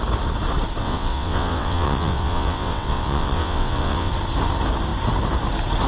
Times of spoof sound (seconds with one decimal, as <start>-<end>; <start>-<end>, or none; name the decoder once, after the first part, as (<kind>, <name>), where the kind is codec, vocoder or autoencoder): 0.8-4.1 (vocoder, WaveNeXt)